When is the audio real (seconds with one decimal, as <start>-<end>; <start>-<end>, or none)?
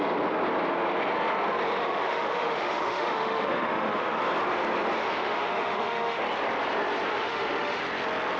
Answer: 0.0-1.8; 4.2-5.0; 6.2-7.1; 7.8-8.4